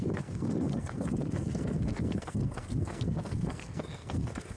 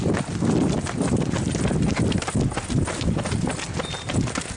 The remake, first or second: first